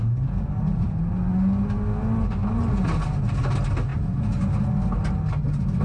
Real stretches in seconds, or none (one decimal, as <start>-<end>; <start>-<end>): 0.0-5.8